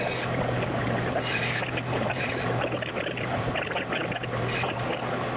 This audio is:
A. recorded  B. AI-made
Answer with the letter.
A